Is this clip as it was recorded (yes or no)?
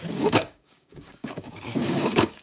no